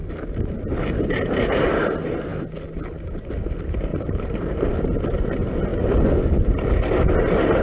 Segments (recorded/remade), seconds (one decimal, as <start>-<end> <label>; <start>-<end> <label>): 0.0-1.6 remade; 1.6-3.9 recorded; 3.9-4.7 remade; 4.7-7.6 recorded